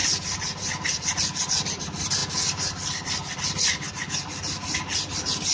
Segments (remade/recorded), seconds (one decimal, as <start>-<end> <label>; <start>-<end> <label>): 0.0-5.5 recorded